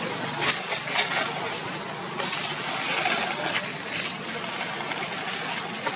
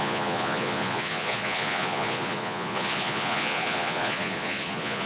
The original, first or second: first